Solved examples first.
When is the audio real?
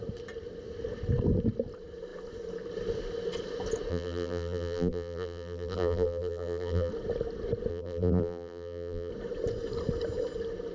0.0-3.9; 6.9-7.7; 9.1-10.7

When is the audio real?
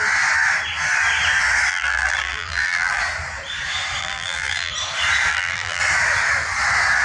0.0-1.7; 3.0-4.0; 4.7-5.3; 5.8-7.0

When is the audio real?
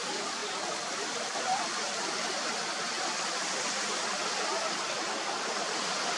0.0-6.2